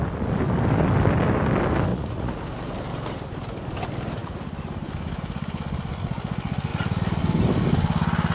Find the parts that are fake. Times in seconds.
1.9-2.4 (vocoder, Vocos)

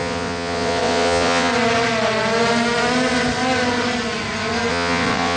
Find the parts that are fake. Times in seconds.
0.0-1.5 (vocoder, WaveNeXt); 4.7-5.4

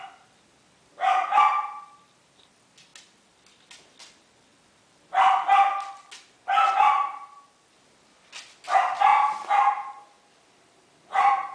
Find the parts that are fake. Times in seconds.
0.0-2.9 (vocoder, BigVGAN v2); 7.9-9.1; 10.4-11.5

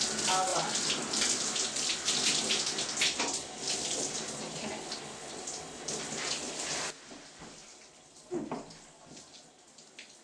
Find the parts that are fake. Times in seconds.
none